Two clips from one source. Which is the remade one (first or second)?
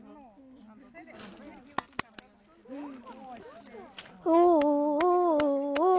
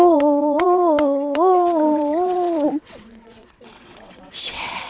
second